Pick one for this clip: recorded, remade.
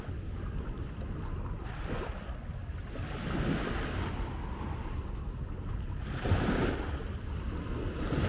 recorded